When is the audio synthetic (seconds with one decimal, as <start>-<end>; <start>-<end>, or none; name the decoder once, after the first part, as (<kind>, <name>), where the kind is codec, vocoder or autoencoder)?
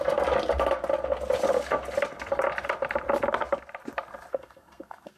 4.3-5.2 (codec, SNAC)